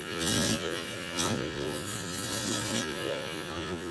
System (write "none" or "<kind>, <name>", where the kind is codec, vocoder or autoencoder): vocoder, Vocos